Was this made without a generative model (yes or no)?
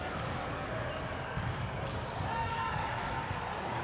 no